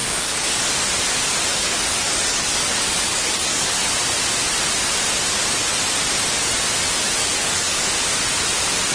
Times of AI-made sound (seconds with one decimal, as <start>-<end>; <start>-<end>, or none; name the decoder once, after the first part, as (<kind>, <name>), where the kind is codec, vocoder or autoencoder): 0.0-0.6 (codec, DAC); 1.5-3.8; 7.2-7.9